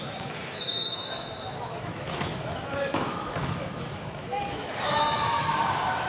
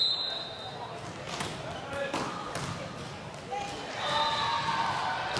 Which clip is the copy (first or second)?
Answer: first